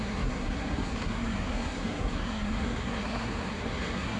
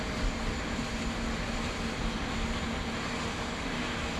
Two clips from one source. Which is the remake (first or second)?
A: first